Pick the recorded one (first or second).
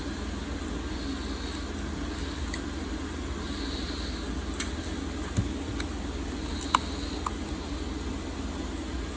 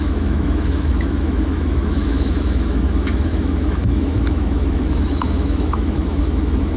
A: first